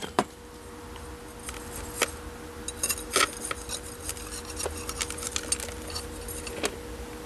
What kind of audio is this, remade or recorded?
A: recorded